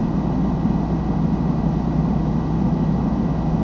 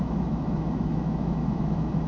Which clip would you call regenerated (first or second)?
second